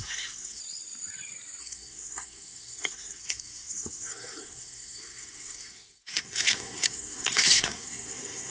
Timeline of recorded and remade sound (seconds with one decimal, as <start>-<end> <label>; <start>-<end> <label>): 0.0-0.6 remade; 0.6-1.6 recorded; 1.6-8.5 remade